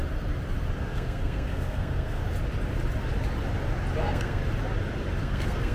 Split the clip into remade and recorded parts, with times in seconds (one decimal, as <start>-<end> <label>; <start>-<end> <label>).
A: 0.0-0.8 recorded; 0.8-2.2 remade; 2.2-4.0 recorded; 4.0-4.4 remade; 4.4-5.2 recorded; 5.2-5.7 remade